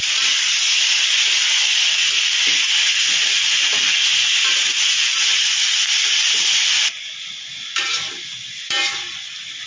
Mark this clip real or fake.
real